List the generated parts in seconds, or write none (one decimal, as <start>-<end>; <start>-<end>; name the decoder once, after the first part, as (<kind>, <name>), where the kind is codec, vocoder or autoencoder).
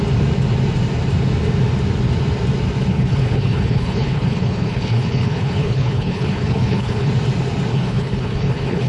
2.9-7.1 (codec, HILCodec); 7.7-8.9